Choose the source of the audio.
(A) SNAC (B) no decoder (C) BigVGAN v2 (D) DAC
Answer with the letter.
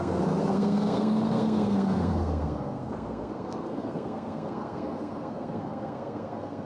A